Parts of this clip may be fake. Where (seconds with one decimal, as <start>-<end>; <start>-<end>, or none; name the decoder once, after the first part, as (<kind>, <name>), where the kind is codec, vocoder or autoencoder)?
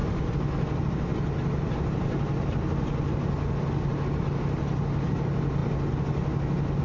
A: none